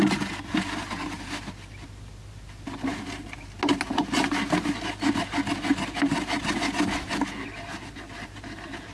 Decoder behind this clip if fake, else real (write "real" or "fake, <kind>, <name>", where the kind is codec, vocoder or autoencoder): real